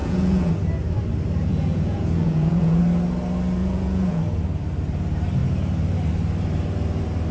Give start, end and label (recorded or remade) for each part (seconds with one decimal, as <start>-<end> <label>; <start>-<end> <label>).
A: 0.0-0.5 remade; 0.5-1.5 recorded; 1.5-2.8 remade; 2.8-3.6 recorded; 3.6-4.2 remade; 4.2-7.3 recorded